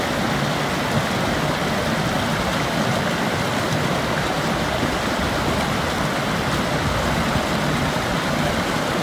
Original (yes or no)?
yes